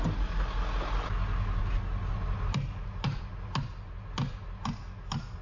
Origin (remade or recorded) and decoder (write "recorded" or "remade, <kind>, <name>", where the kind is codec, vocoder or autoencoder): recorded